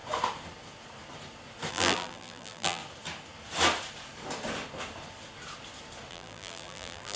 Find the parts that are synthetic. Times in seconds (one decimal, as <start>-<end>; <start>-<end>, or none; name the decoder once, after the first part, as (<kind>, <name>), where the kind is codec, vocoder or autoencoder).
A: 1.7-2.8 (vocoder, BigVGAN v2); 6.1-7.2